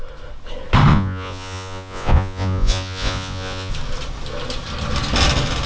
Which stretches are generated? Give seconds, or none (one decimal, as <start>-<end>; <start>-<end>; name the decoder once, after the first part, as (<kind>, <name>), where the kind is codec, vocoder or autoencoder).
0.9-3.7 (vocoder, Vocos)